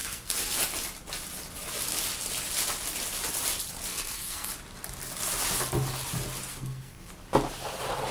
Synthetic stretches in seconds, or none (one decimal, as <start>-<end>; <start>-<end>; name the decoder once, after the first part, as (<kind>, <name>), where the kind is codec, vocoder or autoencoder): 0.0-0.6 (codec, SNAC); 3.9-4.5; 6.5-7.1